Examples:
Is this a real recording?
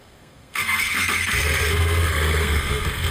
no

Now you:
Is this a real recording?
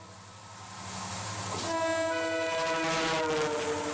yes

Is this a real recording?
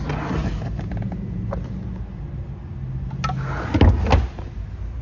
yes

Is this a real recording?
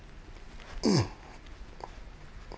yes